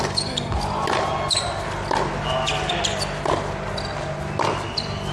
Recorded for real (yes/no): yes